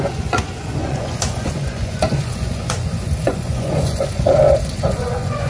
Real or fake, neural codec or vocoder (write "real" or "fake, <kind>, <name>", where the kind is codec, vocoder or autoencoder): fake, vocoder, Vocos